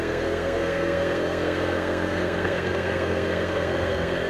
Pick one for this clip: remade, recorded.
remade